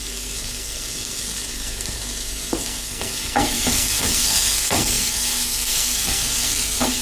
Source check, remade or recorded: remade